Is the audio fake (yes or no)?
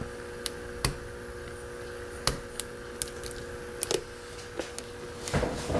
no